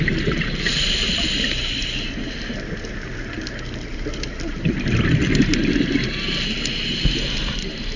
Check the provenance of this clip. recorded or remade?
recorded